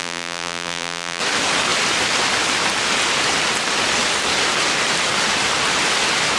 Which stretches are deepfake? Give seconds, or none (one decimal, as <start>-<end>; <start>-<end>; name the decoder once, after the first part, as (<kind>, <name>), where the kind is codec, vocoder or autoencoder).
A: 0.0-1.2 (vocoder, BigVGAN v2)